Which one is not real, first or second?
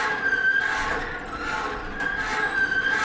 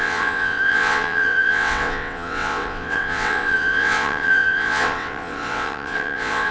second